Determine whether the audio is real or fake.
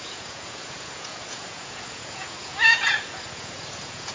fake